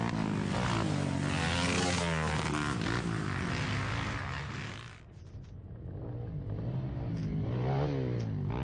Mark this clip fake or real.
real